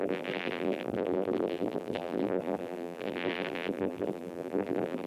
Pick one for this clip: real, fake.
fake